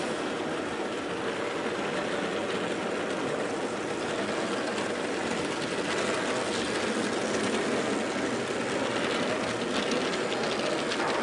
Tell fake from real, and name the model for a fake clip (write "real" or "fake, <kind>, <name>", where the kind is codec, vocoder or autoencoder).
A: real